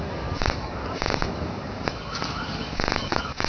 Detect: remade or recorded remade